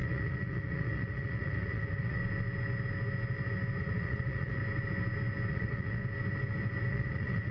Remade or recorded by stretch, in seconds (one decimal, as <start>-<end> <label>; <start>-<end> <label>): 0.0-2.2 remade; 2.2-3.8 recorded; 3.8-4.6 remade; 4.6-5.5 recorded; 5.5-6.0 remade; 6.0-6.9 recorded; 6.9-7.5 remade

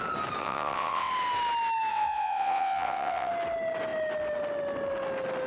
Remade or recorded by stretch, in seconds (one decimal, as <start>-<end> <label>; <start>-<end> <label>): 0.0-0.4 recorded; 0.4-1.1 remade; 1.1-1.9 recorded; 1.9-3.3 remade; 3.3-5.5 recorded

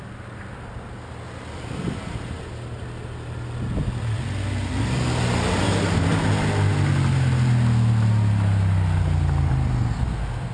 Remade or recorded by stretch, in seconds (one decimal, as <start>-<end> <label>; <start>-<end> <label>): 0.0-10.5 recorded

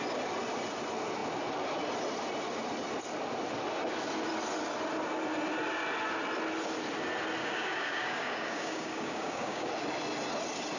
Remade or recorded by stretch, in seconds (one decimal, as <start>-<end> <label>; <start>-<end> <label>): 0.0-7.4 recorded; 7.4-9.7 remade; 9.7-10.8 recorded

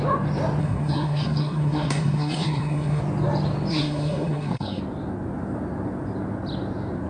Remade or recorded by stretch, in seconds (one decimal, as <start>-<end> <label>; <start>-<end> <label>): 0.0-0.6 recorded; 0.6-3.0 remade; 3.0-3.7 recorded; 3.7-4.8 remade; 4.8-7.1 recorded